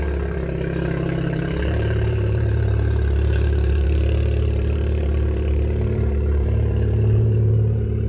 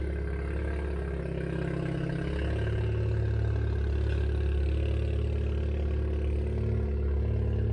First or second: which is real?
second